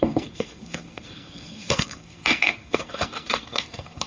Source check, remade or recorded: remade